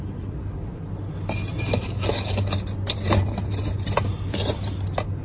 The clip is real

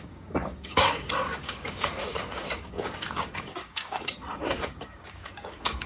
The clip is fake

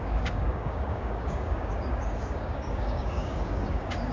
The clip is fake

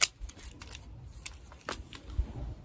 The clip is real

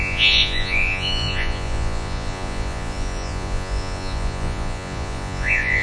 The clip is fake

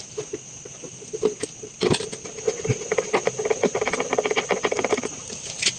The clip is real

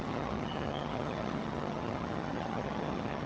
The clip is fake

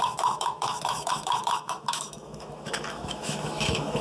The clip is fake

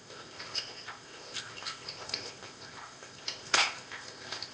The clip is fake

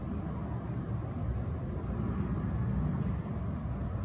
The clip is real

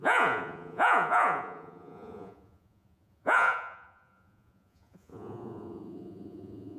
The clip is fake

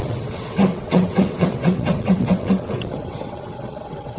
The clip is fake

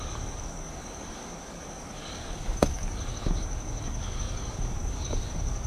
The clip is fake